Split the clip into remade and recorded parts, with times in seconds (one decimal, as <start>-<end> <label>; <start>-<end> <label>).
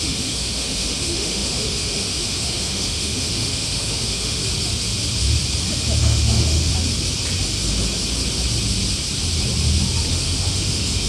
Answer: 0.0-4.4 remade; 4.4-6.0 recorded; 6.0-6.7 remade; 6.7-10.1 recorded; 10.1-11.1 remade